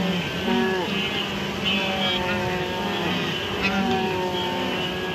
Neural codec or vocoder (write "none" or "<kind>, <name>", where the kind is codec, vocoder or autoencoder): none